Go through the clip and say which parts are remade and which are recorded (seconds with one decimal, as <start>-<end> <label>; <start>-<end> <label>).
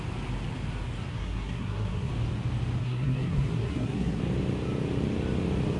0.0-1.1 recorded; 1.1-2.1 remade; 2.1-2.8 recorded; 2.8-4.2 remade; 4.2-5.8 recorded